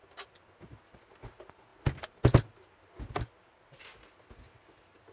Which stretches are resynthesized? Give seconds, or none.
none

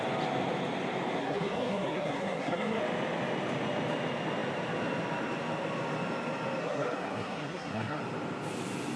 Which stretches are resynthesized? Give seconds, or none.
1.2-2.8; 6.6-8.0

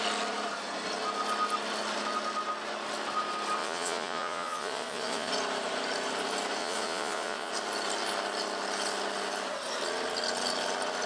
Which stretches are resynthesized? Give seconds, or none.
3.6-5.3; 6.6-7.5

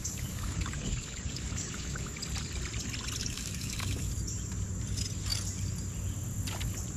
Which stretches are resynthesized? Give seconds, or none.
0.0-2.2; 3.2-4.1

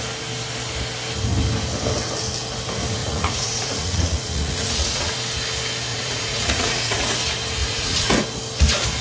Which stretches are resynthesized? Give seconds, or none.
3.0-5.1; 5.9-7.1; 7.6-8.1